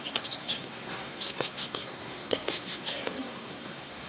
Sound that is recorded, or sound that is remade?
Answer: remade